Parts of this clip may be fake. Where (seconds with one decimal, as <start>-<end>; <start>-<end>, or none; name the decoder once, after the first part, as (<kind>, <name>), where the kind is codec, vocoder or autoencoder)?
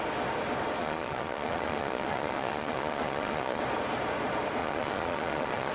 0.8-3.6 (vocoder, Vocos); 4.6-5.7